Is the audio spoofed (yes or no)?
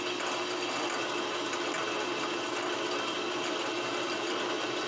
no